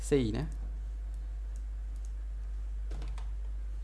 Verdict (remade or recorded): recorded